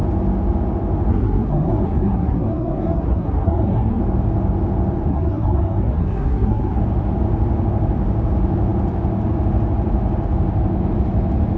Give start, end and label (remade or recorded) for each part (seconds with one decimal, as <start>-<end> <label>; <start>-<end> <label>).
0.0-1.1 recorded; 1.1-4.0 remade; 4.0-5.1 recorded; 5.1-6.8 remade; 6.8-11.6 recorded